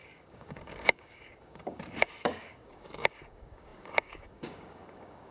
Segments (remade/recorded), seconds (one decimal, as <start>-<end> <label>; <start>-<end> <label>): 0.0-5.3 remade